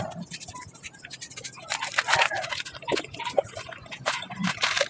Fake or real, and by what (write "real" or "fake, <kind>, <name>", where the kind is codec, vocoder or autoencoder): real